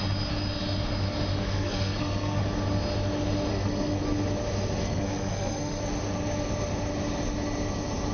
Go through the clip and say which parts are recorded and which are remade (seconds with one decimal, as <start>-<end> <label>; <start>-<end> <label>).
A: 0.0-1.3 recorded; 1.3-2.4 remade; 2.4-3.5 recorded; 3.5-4.0 remade; 4.0-4.8 recorded; 4.8-5.8 remade; 5.8-8.1 recorded